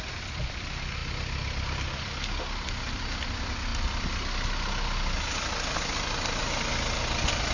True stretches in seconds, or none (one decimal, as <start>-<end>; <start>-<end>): 0.0-7.5